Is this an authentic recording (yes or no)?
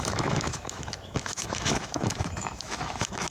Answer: no